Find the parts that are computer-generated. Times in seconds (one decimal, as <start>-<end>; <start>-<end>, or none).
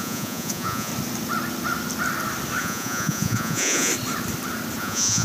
0.0-0.9; 2.6-3.9; 4.8-5.2